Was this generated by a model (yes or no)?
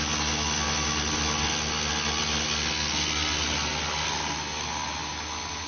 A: no